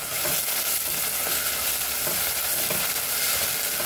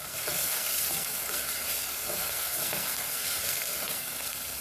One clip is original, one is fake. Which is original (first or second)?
first